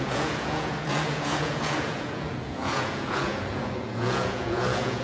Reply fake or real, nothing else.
fake